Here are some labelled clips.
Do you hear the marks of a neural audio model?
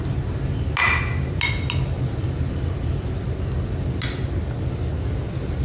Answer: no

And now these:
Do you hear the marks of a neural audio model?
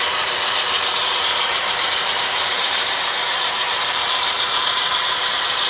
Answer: yes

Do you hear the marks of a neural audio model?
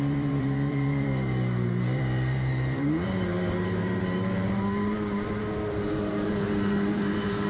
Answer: yes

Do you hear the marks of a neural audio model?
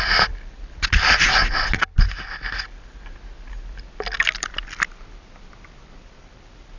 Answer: no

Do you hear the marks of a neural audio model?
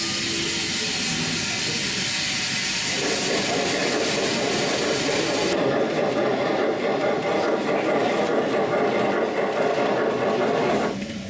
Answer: no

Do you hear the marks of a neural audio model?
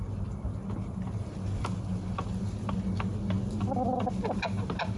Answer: no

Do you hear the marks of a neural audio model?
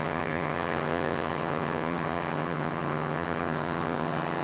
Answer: yes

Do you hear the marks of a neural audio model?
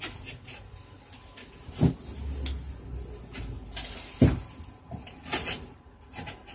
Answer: no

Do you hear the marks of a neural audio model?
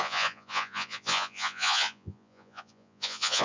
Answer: yes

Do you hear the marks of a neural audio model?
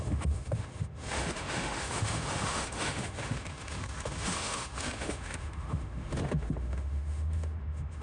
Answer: yes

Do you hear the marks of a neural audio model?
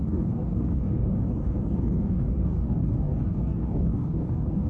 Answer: yes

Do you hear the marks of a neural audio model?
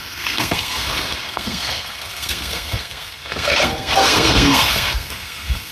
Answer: yes